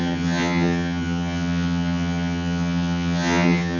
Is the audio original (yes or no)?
no